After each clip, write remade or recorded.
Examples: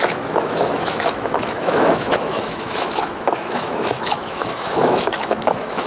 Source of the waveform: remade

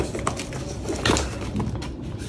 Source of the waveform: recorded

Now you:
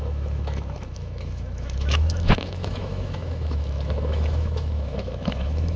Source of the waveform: remade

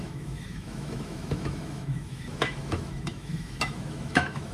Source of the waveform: remade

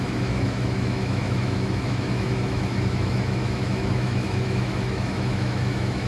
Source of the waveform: remade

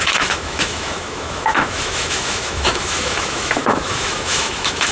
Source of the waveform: remade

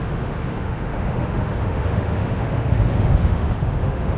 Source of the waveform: remade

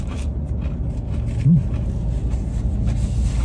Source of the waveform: recorded